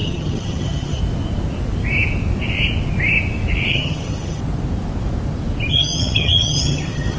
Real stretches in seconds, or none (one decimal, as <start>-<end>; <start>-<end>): 1.0-3.7; 4.4-5.7